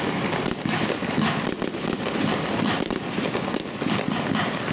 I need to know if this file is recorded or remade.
recorded